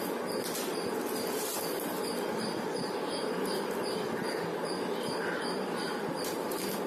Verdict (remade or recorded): recorded